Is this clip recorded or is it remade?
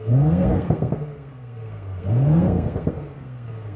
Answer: remade